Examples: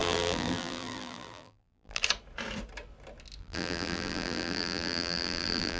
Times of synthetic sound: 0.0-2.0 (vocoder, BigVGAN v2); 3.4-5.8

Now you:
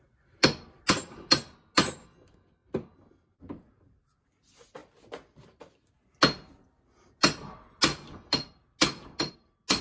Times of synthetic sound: none

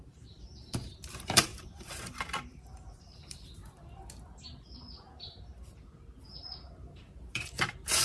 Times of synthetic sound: 0.0-3.6 (vocoder, BigVGAN v2); 7.3-8.0